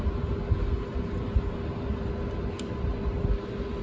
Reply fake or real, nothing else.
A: real